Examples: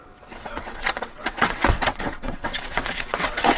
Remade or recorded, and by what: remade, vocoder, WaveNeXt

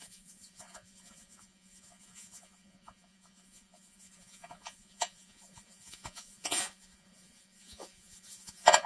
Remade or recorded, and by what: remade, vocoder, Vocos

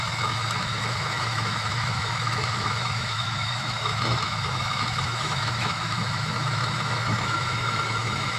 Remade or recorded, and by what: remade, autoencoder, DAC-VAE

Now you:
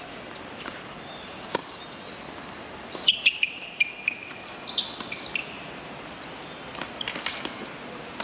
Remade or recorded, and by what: recorded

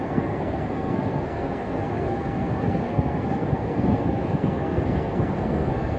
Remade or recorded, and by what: remade, codec, SNAC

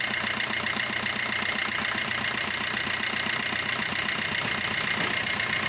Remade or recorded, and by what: recorded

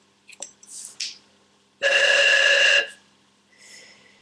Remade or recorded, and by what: recorded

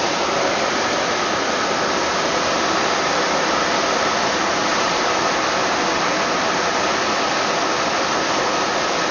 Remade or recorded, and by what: recorded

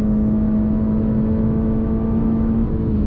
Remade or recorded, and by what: remade, autoencoder, DAC-VAE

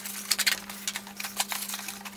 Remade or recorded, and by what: recorded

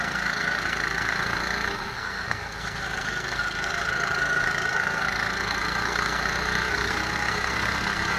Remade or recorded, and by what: remade, codec, SNAC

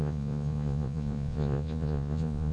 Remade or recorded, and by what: remade, vocoder, Vocos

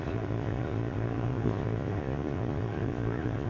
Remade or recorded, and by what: remade, vocoder, Vocos